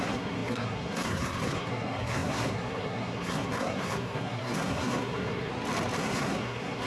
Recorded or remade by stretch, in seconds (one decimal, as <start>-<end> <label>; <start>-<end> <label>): 0.0-5.5 remade; 5.5-6.0 recorded; 6.0-6.9 remade